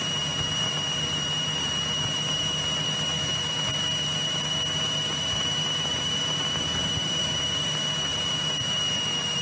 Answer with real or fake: real